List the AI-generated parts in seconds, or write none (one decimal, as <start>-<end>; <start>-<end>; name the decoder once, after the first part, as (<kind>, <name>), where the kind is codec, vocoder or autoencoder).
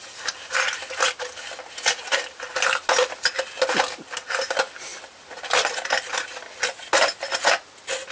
none